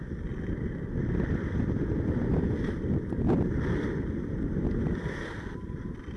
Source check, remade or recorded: recorded